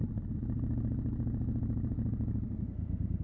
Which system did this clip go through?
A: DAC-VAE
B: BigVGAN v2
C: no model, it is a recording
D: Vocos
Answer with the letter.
B